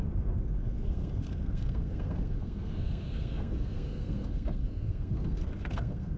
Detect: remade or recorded remade